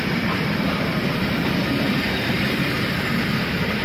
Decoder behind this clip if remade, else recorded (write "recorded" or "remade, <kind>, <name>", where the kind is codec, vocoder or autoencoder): recorded